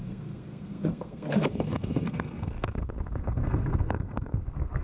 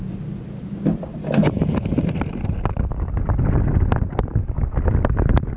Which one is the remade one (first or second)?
first